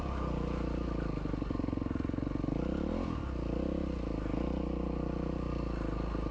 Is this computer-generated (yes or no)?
no